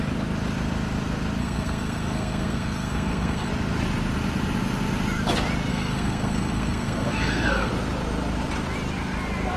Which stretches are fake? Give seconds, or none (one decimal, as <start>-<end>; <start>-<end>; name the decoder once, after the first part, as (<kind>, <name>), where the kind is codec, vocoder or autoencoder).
1.4-3.5 (codec, SNAC); 5.7-7.7